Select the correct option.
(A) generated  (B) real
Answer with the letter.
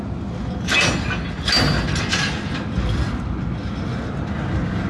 B